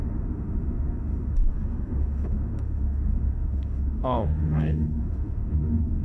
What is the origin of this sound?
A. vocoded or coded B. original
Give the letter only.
A